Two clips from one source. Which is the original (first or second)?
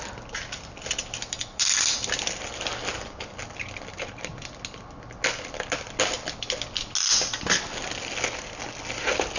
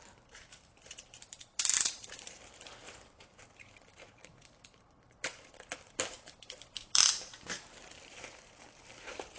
first